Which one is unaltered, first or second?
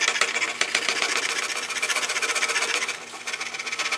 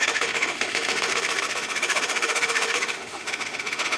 first